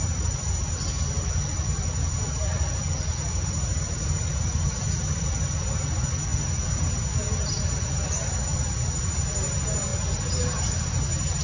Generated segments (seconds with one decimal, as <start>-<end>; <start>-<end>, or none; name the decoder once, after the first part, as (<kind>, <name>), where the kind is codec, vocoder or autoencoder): none